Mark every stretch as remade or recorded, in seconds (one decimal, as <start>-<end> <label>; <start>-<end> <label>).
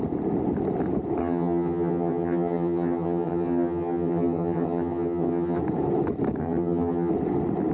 0.0-1.2 recorded; 1.2-5.6 remade; 5.6-6.4 recorded; 6.4-7.1 remade; 7.1-7.7 recorded